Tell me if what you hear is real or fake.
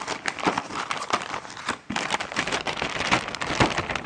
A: real